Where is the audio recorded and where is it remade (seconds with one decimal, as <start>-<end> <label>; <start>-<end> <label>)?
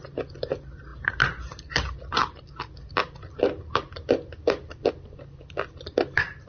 0.0-0.9 remade; 0.9-2.0 recorded; 2.0-6.5 remade